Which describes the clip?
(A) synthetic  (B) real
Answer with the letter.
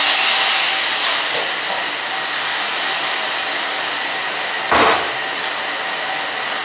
B